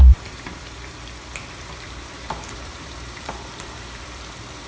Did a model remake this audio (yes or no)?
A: yes